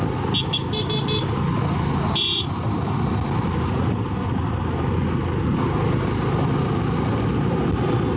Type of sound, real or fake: real